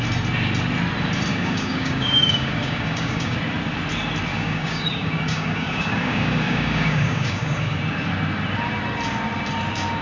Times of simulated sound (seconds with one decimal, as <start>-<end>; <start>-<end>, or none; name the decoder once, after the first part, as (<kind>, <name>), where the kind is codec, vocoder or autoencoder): 1.3-3.4 (codec, DAC); 4.3-7.8